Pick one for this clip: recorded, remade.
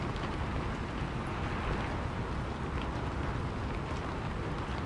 recorded